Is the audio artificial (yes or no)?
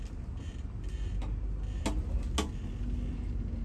no